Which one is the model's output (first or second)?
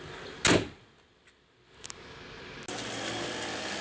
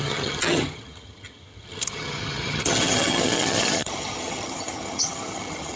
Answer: second